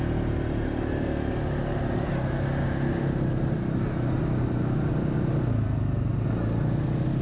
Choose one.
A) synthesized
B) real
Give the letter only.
B